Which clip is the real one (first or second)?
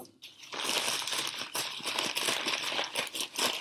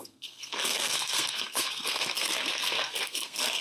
first